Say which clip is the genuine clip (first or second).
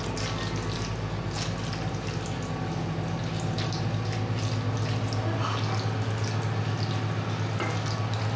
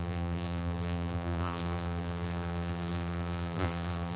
first